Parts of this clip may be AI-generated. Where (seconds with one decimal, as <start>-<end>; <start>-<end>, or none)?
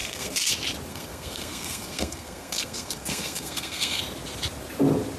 0.0-0.5; 0.9-4.0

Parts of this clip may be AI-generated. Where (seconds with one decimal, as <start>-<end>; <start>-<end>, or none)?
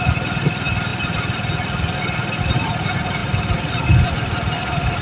none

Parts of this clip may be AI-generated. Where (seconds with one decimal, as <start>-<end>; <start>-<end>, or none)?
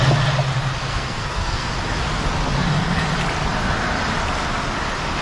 0.9-1.7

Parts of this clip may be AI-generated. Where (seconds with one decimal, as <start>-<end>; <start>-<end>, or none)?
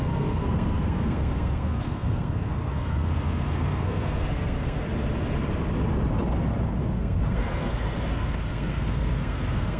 0.0-4.8; 6.8-9.8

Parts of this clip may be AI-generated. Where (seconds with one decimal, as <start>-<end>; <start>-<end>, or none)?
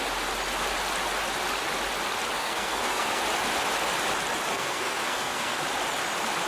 2.4-3.2; 4.5-5.6